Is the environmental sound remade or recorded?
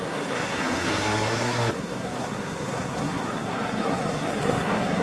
remade